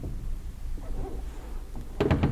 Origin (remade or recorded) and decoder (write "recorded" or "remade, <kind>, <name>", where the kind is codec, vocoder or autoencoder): recorded